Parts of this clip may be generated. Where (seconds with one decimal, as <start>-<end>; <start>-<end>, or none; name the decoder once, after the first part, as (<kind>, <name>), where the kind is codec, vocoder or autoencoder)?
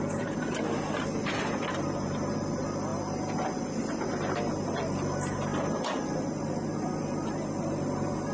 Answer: none